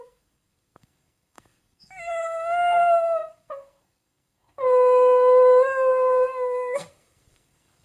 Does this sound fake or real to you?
fake